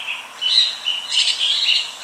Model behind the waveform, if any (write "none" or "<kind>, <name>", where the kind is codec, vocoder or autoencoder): none